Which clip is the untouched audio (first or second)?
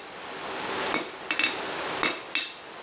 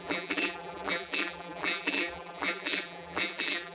first